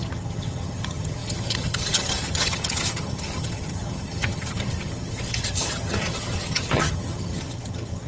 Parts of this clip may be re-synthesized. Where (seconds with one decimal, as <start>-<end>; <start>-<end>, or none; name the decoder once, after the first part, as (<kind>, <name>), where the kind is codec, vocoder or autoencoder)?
0.0-8.1 (vocoder, HiFi-GAN)